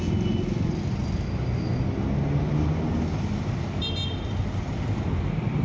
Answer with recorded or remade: recorded